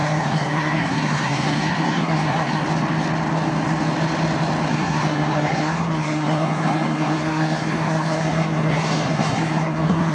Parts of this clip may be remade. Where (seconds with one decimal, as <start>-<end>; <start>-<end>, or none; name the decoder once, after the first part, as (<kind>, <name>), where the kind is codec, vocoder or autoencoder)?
0.0-2.6 (codec, SNAC); 4.7-10.1